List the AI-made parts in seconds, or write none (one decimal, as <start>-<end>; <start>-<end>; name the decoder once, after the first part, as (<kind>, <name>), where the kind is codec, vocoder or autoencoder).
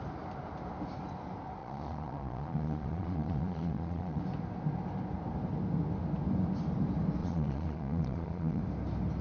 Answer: 1.6-4.2 (vocoder, Vocos); 7.2-8.6